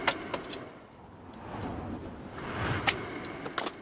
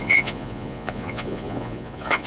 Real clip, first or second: first